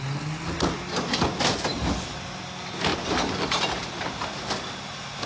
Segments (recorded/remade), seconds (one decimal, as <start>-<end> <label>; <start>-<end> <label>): 0.0-5.3 recorded